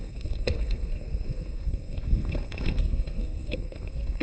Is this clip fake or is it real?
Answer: fake